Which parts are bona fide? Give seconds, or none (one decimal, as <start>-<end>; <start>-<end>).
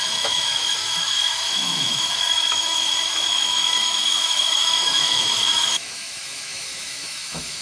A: none